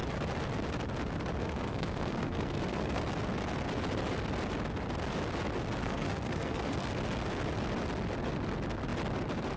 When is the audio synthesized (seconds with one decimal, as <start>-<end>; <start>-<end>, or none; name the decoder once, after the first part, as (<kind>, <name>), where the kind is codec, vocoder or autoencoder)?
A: 1.4-3.0 (codec, SNAC); 5.8-6.9